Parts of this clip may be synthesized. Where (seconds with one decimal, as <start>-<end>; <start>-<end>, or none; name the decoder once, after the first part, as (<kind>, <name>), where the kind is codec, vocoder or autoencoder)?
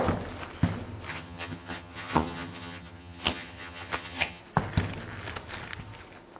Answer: 1.1-4.4 (vocoder, HiFi-GAN)